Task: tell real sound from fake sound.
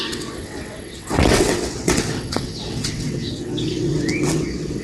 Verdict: fake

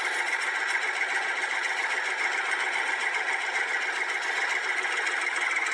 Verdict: real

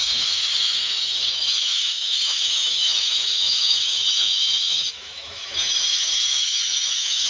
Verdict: fake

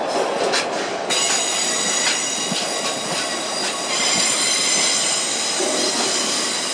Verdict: real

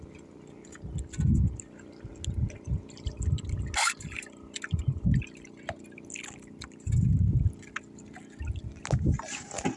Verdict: real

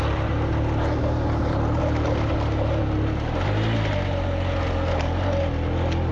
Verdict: real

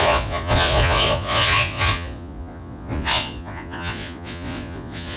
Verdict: fake